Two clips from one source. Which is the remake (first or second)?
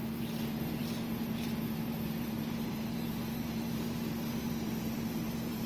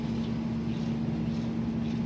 first